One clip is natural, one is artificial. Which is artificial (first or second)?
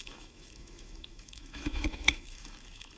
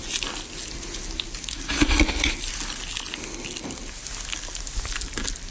first